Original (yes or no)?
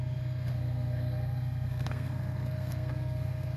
no